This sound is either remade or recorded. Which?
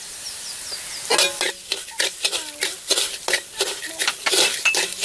recorded